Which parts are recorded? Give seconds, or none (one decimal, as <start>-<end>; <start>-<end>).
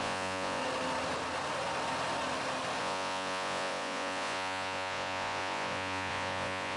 0.6-2.8